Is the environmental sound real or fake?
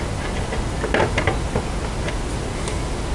real